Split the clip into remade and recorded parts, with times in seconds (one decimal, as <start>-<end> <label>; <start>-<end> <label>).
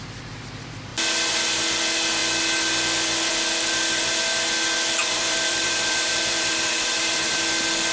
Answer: 0.0-5.0 recorded; 5.0-7.4 remade; 7.4-7.9 recorded